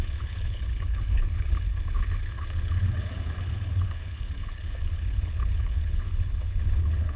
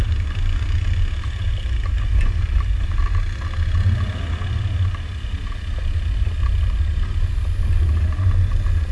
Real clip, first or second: second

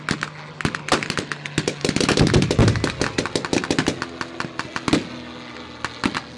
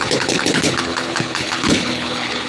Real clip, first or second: first